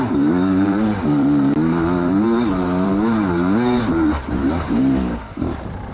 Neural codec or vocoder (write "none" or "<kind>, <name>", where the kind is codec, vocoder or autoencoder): vocoder, BigVGAN v2